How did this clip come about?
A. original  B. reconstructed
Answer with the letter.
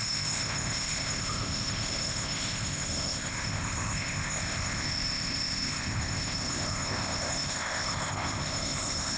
B